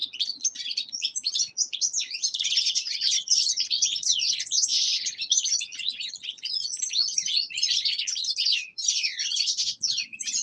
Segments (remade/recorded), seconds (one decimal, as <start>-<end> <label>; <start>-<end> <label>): 0.0-10.4 remade